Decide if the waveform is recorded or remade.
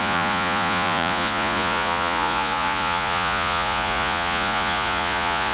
remade